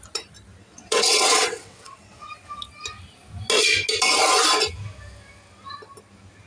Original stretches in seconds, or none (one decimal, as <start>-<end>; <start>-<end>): 0.0-0.6; 2.3-6.5

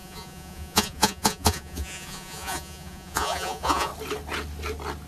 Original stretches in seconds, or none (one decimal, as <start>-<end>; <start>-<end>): 3.9-5.1

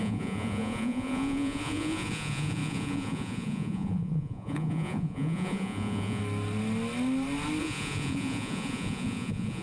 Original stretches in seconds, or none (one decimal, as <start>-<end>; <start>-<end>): 6.2-7.6